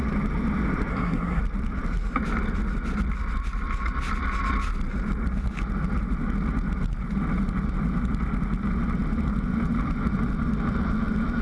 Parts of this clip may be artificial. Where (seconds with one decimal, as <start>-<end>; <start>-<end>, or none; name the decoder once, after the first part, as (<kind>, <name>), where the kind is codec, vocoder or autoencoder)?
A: 0.9-1.4 (codec, SNAC)